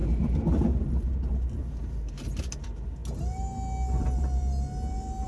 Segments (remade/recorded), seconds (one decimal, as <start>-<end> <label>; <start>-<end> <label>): 0.0-5.3 recorded